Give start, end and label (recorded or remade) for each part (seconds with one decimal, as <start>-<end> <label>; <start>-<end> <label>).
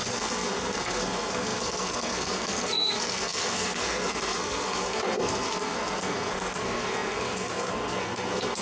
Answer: 0.0-8.6 remade